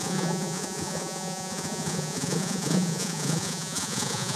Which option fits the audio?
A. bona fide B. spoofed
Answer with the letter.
B